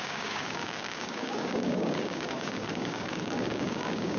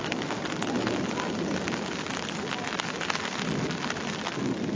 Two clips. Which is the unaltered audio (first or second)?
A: second